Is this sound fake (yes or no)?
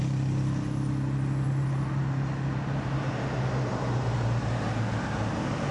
no